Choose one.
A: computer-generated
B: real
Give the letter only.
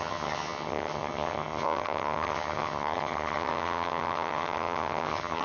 A